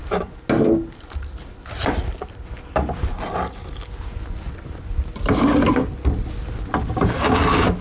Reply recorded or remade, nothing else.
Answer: recorded